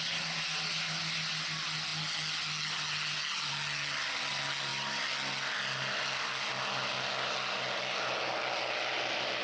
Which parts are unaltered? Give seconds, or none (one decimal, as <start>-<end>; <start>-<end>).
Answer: 0.0-9.4